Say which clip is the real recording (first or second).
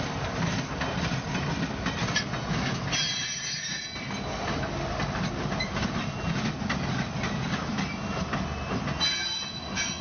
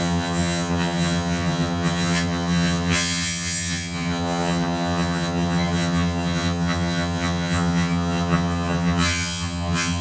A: first